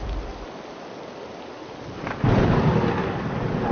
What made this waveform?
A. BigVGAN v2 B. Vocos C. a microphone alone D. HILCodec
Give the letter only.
C